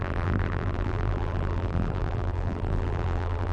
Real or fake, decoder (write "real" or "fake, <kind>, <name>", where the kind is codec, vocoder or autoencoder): fake, vocoder, BigVGAN v2